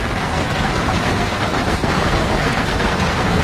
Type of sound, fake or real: fake